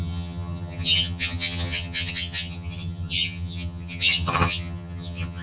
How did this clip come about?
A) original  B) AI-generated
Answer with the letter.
B